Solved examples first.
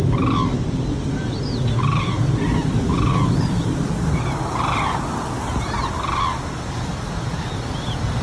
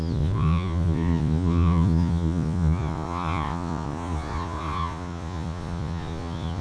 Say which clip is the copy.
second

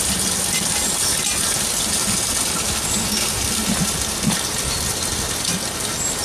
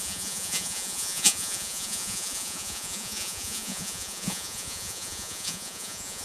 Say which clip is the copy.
second